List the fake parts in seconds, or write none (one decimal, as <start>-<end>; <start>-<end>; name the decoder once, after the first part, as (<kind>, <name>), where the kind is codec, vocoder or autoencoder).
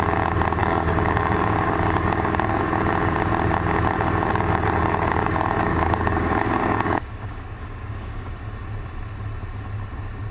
0.6-2.6 (codec, DAC); 4.3-8.3